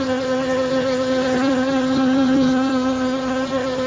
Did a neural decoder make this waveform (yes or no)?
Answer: yes